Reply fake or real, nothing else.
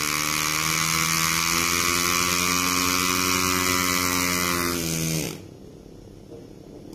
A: real